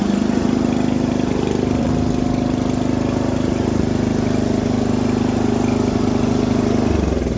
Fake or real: real